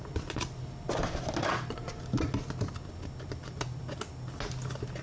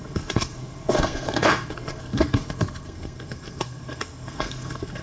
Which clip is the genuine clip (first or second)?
first